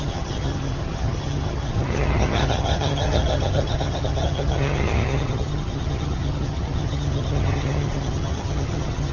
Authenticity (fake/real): fake